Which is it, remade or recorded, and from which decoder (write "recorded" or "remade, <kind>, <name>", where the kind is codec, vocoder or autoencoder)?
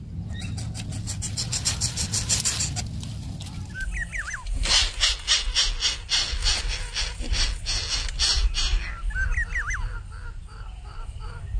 recorded